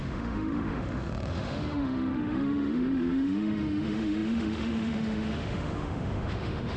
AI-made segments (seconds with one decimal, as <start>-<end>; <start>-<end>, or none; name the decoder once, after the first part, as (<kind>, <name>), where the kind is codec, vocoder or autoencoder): 0.0-6.8 (autoencoder, DAC-VAE)

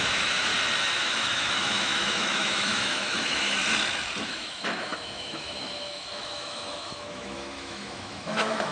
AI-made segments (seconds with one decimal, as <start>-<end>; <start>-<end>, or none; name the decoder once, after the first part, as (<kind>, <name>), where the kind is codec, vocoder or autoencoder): 0.0-0.5 (autoencoder, DAC-VAE); 1.0-3.6; 4.2-8.7

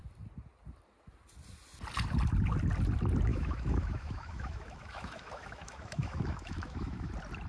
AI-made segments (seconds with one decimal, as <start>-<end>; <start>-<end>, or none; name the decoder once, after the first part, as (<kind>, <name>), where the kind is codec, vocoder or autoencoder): 3.3-7.1 (autoencoder, DAC-VAE)

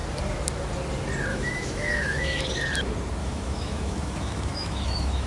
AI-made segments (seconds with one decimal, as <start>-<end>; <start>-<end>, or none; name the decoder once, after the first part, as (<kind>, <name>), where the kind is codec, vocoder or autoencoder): 1.3-2.4 (autoencoder, DAC-VAE); 3.2-5.3

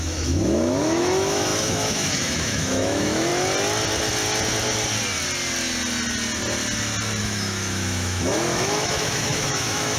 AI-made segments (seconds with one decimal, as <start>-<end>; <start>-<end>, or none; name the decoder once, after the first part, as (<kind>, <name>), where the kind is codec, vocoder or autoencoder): 0.0-3.3 (autoencoder, DAC-VAE); 7.2-10.0

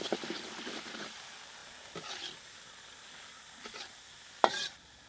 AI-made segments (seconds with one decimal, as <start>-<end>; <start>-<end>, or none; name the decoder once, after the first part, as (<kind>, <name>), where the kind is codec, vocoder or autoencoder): none

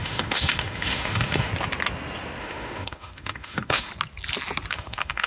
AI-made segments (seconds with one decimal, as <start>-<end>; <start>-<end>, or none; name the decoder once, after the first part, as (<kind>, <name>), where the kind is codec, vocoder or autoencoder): 0.0-1.5 (autoencoder, DAC-VAE); 2.4-3.9; 4.7-5.3